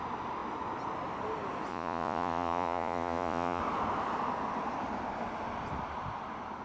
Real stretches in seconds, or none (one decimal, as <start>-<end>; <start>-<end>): 0.0-1.7; 3.6-6.6